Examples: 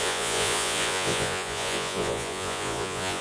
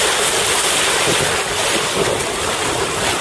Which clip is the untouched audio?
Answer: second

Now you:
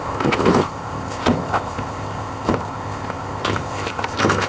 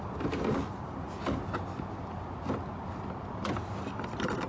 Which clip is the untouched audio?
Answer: second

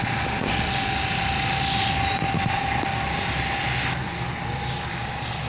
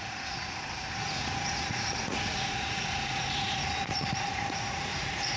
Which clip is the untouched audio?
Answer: first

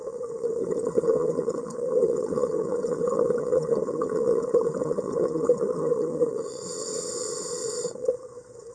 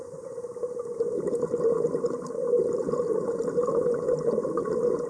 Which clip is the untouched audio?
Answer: second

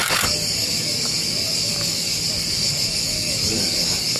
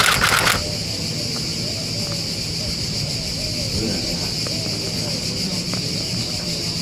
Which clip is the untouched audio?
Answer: second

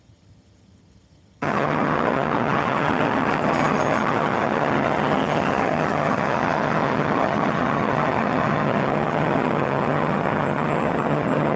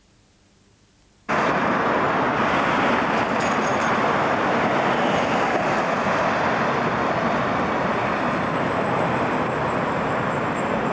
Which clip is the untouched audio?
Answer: second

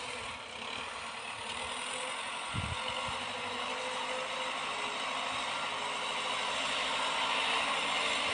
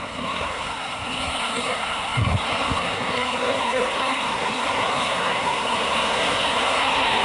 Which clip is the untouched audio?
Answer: first